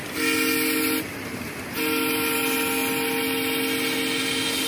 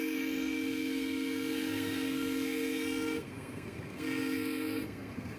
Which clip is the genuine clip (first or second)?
first